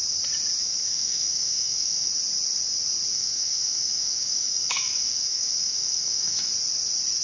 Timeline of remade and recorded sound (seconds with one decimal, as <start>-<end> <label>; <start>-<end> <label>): 0.0-0.6 recorded; 0.6-2.1 remade; 2.1-3.1 recorded; 3.1-6.5 remade; 6.5-7.2 recorded